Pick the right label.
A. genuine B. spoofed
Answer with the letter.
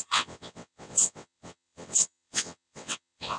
B